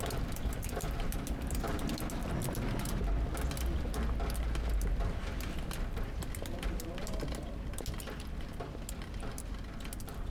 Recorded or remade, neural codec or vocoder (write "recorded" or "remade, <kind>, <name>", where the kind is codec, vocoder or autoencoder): recorded